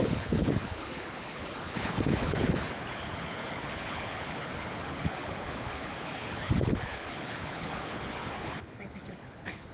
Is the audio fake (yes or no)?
yes